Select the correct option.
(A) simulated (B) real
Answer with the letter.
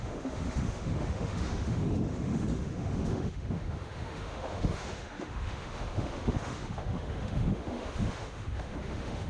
A